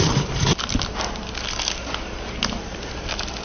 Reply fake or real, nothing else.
real